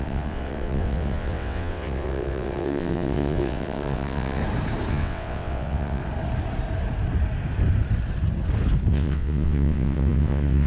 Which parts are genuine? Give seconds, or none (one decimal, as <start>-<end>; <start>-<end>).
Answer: 4.4-4.9; 6.0-8.9